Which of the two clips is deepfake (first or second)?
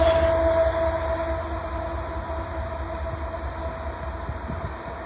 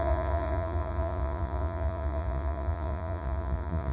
second